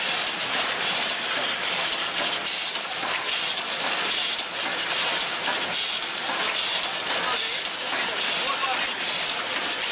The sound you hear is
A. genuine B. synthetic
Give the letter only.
A